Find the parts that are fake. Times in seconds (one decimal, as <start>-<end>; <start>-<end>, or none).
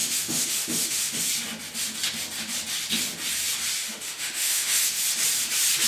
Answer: 0.0-1.3; 3.8-5.0